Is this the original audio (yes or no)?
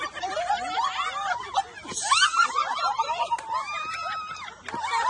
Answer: yes